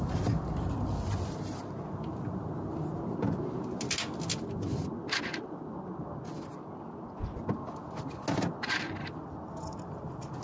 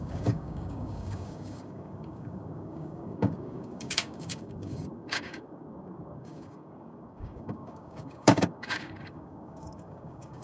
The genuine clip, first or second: first